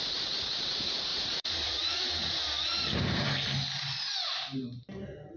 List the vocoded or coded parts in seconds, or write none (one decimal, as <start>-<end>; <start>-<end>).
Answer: 1.1-2.0